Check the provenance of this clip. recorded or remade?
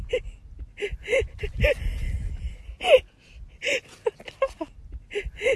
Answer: recorded